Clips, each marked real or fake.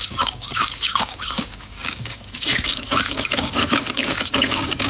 fake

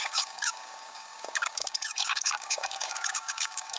fake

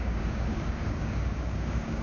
fake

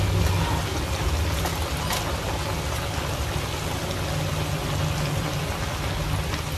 real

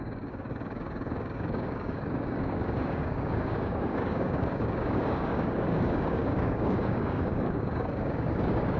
fake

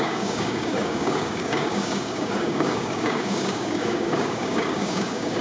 fake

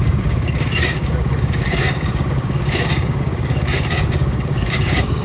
fake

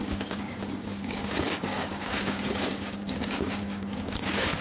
fake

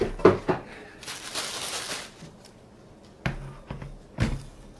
real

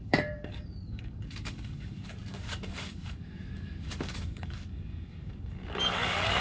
fake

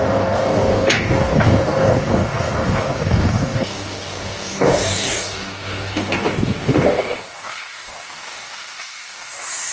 fake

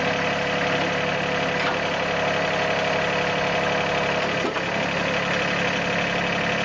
real